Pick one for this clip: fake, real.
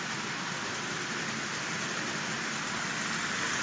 real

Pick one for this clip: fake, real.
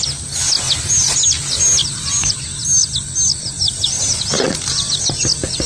real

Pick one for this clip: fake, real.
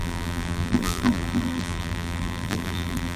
fake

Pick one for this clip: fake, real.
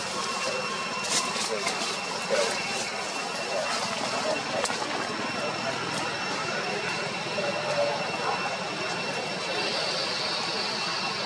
real